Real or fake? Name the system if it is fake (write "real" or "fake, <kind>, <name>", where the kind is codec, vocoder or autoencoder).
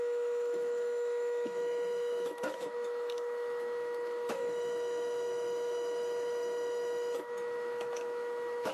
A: fake, autoencoder, DAC-VAE